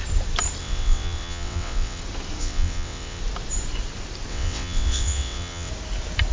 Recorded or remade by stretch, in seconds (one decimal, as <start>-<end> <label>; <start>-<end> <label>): 0.0-0.6 recorded; 0.6-2.0 remade; 2.0-2.4 recorded; 2.4-3.2 remade; 3.2-4.3 recorded; 4.3-5.7 remade; 5.7-6.3 recorded